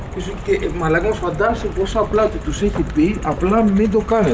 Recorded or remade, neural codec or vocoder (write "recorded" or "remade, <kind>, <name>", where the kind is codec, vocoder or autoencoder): recorded